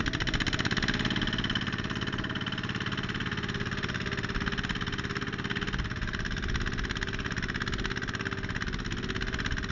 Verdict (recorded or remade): recorded